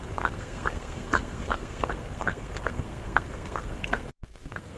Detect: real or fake fake